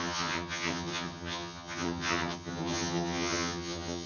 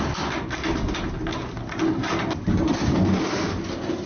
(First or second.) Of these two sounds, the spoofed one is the first